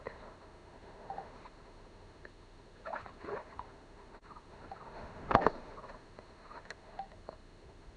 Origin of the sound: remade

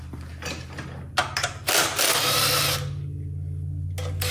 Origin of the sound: recorded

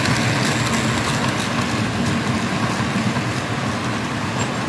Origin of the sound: recorded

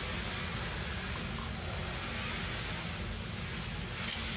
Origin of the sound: recorded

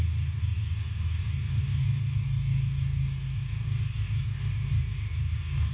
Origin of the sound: remade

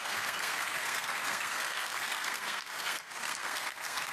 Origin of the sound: remade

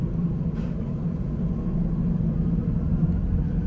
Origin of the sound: recorded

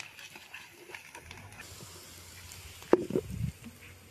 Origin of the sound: recorded